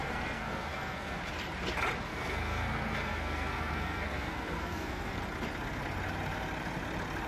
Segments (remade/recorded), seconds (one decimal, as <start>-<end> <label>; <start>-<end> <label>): 0.0-1.2 remade; 1.2-2.1 recorded; 2.1-5.2 remade; 5.2-7.3 recorded